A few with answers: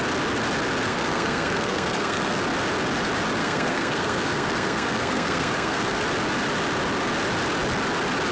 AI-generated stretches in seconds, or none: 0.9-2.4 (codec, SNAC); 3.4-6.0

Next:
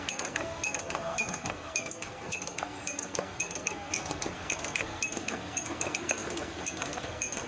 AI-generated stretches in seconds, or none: 0.0-7.5 (codec, SNAC)

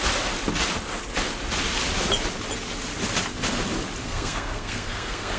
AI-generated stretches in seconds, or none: 4.0-5.4 (codec, SNAC)